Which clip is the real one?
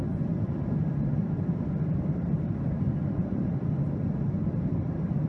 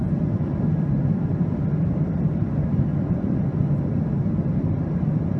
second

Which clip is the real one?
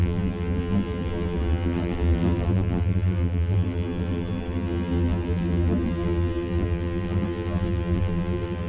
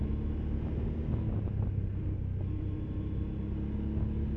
second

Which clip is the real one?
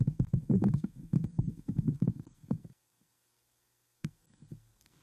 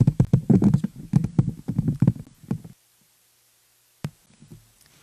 second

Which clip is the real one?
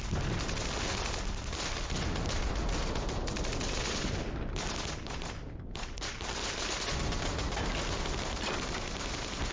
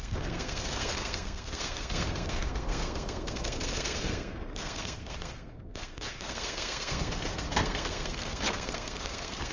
first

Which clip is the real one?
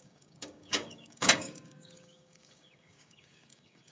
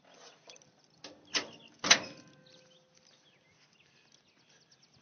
second